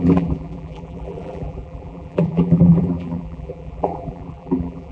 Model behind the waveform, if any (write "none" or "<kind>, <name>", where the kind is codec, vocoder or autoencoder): vocoder, BigVGAN v2